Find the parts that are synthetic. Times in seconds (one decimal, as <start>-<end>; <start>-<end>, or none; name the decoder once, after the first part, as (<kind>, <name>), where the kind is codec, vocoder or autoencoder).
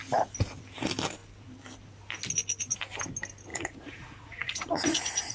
3.5-5.3 (vocoder, Vocos)